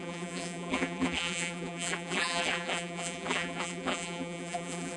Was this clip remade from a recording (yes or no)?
yes